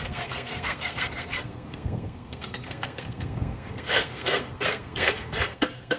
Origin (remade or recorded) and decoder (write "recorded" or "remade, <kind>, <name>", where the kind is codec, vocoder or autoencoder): remade, codec, SNAC